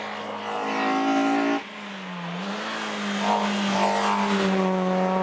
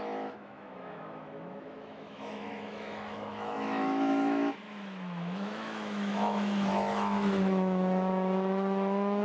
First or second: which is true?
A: first